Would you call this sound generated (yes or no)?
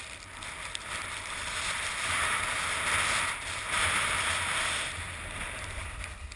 no